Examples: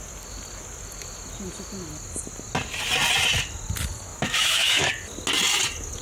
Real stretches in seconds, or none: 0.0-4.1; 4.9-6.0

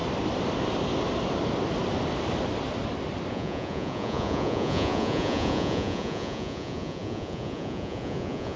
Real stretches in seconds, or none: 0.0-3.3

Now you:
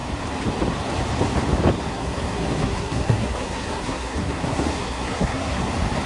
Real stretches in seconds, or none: 0.0-1.9; 5.6-6.1

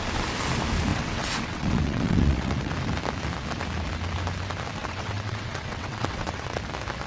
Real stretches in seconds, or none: 0.0-0.9; 2.7-4.8; 6.6-7.1